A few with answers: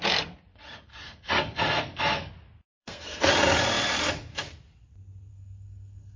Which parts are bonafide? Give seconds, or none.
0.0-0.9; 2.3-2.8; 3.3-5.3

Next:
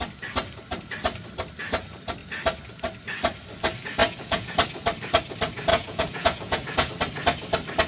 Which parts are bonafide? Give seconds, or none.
0.0-4.0; 4.5-5.7; 6.9-7.9

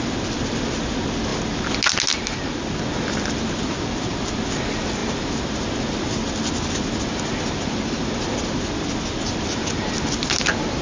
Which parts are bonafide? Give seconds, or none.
0.0-10.8

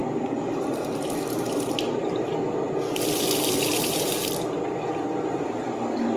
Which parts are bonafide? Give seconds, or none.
none

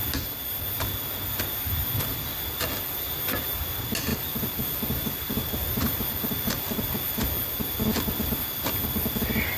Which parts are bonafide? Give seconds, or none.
0.0-4.1; 7.2-9.6